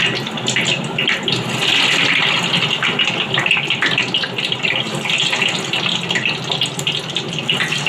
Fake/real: real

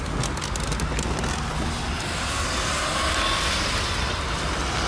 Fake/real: real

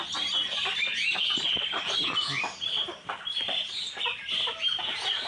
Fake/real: fake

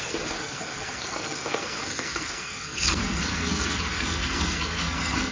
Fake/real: fake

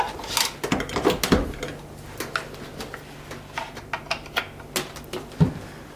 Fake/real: real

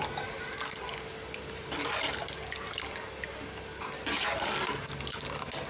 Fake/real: real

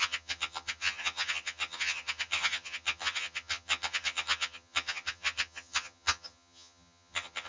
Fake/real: fake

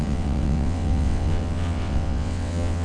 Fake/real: fake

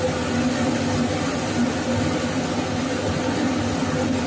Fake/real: real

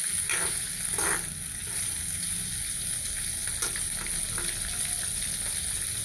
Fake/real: real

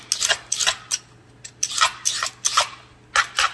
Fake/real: real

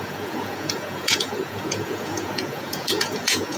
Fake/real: fake